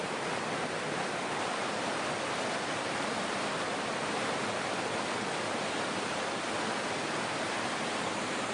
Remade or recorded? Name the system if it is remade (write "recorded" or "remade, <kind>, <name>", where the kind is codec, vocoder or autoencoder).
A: recorded